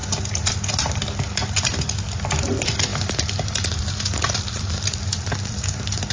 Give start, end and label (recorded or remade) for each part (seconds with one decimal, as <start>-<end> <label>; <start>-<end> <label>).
0.0-1.5 recorded; 1.5-6.1 remade